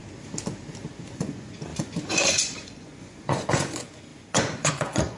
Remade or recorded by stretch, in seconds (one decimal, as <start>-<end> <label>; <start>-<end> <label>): 0.0-0.9 recorded; 0.9-5.2 remade